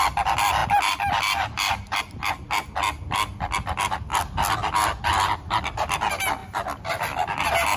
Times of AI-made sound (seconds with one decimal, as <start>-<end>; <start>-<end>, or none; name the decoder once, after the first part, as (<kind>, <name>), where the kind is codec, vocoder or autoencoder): none